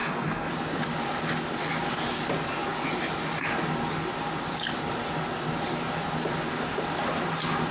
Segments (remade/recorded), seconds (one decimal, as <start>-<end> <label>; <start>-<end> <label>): 0.0-0.5 remade; 0.5-7.7 recorded